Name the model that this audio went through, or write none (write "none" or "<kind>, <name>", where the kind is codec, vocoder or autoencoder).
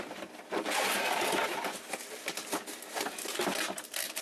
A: vocoder, BigVGAN v2